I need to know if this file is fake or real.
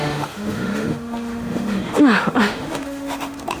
fake